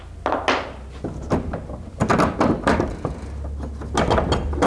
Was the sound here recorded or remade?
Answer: recorded